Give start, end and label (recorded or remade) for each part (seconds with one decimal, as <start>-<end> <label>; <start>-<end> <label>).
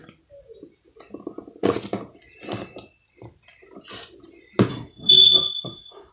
0.0-4.7 recorded; 4.7-6.1 remade